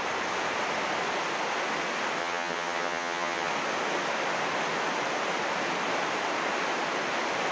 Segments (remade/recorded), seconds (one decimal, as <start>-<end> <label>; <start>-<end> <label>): 0.0-2.2 recorded; 2.2-3.5 remade; 3.5-7.5 recorded